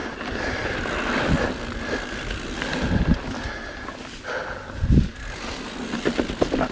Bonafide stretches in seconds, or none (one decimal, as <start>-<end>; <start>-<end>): 0.0-6.7